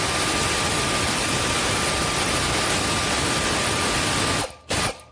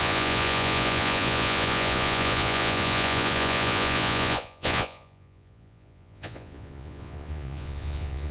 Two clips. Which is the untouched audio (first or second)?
first